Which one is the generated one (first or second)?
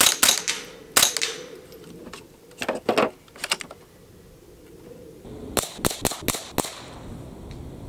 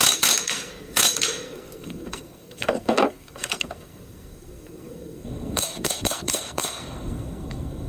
second